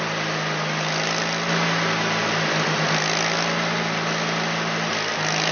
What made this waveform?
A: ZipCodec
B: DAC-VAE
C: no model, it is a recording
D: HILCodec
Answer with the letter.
C